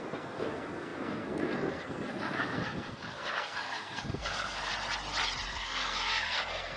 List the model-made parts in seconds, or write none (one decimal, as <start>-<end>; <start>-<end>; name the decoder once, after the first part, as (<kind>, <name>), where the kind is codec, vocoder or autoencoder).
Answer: 0.0-4.7 (codec, SNAC); 5.5-6.8